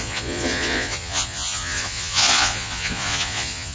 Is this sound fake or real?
fake